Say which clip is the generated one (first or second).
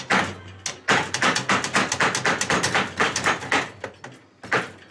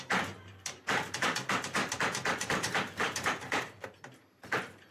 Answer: second